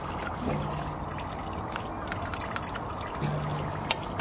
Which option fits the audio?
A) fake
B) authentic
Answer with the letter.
B